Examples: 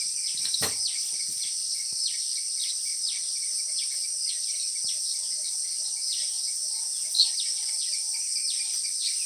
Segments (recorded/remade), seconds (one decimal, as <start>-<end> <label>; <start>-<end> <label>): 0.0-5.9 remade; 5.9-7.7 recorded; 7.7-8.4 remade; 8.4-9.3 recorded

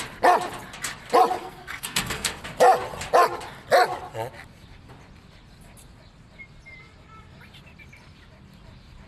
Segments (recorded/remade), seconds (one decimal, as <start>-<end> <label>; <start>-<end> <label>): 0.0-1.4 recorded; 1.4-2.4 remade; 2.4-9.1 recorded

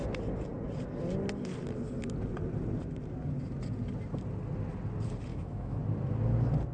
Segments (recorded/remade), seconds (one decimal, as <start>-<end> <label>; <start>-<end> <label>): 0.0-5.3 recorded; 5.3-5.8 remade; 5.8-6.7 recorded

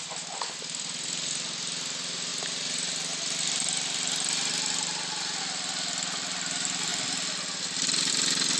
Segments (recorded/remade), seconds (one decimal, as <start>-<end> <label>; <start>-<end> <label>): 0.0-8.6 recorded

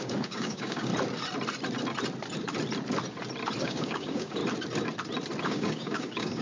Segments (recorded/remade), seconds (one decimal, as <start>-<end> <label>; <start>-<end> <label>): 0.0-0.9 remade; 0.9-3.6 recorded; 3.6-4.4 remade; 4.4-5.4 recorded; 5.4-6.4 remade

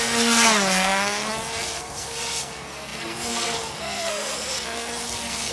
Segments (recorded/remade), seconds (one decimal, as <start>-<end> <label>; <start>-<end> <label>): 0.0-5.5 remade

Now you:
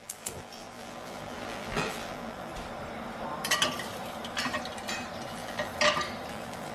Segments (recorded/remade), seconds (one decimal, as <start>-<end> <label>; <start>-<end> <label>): 0.0-2.5 remade; 2.5-5.3 recorded; 5.3-5.7 remade; 5.7-6.3 recorded; 6.3-6.7 remade